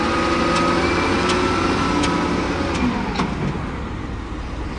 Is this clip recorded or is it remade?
recorded